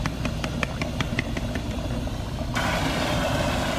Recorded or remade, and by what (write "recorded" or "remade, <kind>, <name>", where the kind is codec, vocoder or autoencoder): remade, vocoder, BigVGAN v2